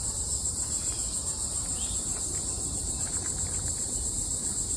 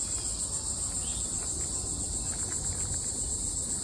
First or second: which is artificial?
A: first